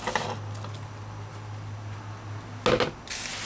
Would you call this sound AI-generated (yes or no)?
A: no